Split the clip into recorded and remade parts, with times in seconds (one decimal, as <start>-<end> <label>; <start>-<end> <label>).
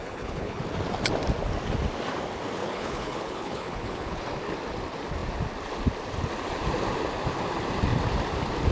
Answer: 0.0-0.6 remade; 0.6-2.6 recorded; 2.6-4.2 remade; 4.2-8.7 recorded